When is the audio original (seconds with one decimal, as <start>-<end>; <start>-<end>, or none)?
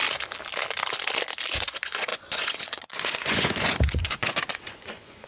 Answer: 0.0-1.5